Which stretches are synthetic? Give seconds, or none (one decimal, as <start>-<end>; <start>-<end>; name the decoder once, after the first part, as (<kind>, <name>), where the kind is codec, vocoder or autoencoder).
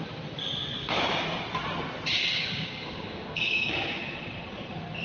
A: 0.7-1.2 (codec, DAC); 2.2-3.7